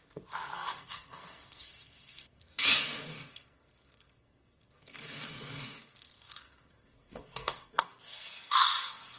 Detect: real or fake fake